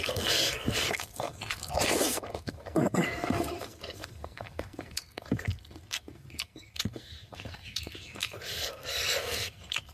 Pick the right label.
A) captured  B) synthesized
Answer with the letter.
B